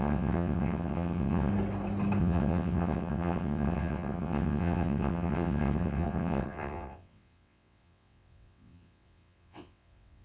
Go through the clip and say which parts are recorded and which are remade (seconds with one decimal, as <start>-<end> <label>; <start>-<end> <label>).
0.0-1.5 remade; 1.5-2.2 recorded; 2.2-10.2 remade